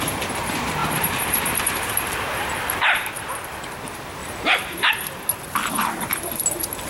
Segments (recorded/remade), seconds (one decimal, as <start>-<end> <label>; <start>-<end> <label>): 0.0-0.8 recorded; 0.8-3.1 remade; 3.1-4.2 recorded; 4.2-4.9 remade; 4.9-6.9 recorded